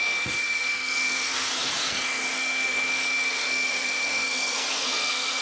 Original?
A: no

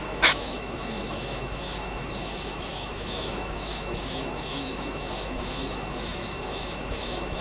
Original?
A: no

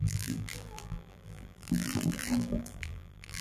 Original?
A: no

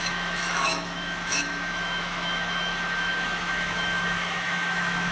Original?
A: no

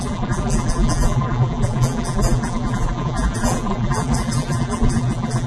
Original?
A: no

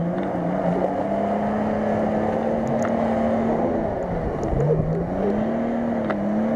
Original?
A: yes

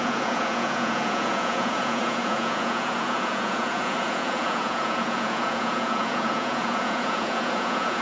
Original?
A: no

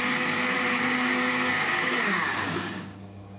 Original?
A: no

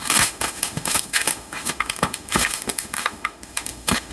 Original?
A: no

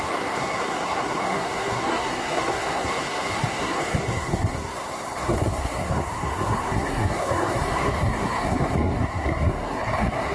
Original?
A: no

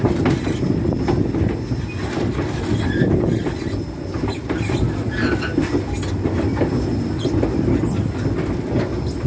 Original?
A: yes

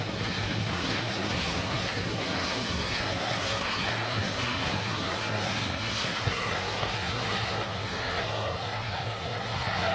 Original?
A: no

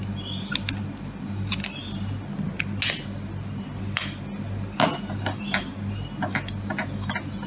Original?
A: yes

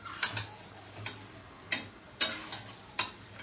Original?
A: yes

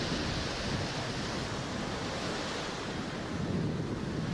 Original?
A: yes